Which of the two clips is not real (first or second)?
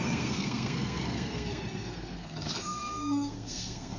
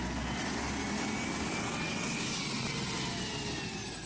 first